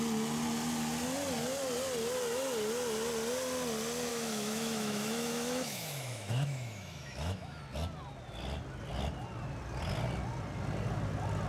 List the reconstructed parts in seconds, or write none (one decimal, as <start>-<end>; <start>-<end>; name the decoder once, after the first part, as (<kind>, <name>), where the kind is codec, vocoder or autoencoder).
4.1-7.6 (autoencoder, DAC-VAE)